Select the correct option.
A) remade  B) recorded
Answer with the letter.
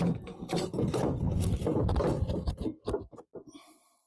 B